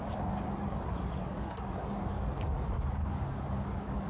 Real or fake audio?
fake